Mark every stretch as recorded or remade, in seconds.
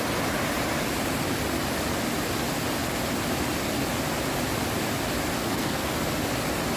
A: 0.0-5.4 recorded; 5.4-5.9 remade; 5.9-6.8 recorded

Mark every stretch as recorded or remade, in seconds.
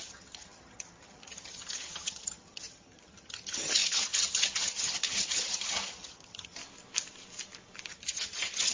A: 0.0-6.6 remade; 6.6-7.9 recorded; 7.9-8.7 remade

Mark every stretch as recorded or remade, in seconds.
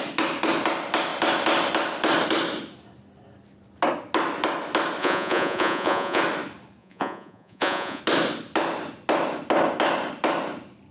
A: 0.0-5.0 recorded; 5.0-6.2 remade; 6.2-6.8 recorded; 6.8-8.0 remade; 8.0-10.9 recorded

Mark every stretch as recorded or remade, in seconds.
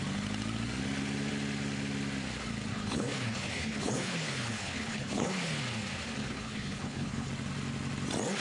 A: 0.0-2.7 recorded; 2.7-5.6 remade; 5.6-6.2 recorded; 6.2-7.3 remade; 7.3-8.4 recorded